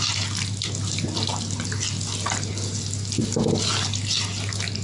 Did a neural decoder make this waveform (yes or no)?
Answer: no